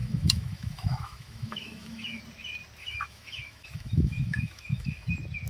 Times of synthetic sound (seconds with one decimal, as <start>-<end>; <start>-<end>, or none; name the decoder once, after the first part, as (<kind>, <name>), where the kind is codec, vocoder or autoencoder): 0.0-2.2 (autoencoder, DAC-VAE); 2.8-5.1